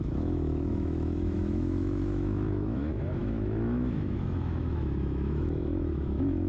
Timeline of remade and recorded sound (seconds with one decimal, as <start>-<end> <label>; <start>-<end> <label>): 0.0-6.5 remade